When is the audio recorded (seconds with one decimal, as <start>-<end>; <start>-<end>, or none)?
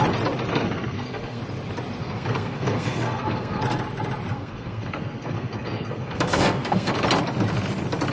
0.0-0.5; 1.4-2.0; 3.6-4.3; 6.9-8.1